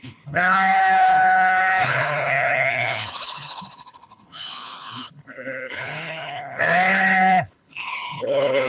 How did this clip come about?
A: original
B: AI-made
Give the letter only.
B